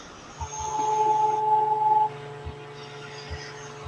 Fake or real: real